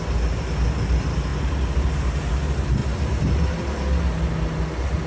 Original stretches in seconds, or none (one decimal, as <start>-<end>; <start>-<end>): 0.0-5.1